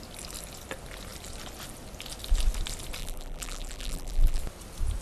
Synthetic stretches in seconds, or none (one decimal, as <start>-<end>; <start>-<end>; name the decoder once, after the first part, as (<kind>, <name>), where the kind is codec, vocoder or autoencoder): 3.0-4.4 (vocoder, BigVGAN v2)